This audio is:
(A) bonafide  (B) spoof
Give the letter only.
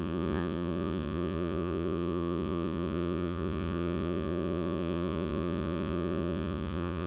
B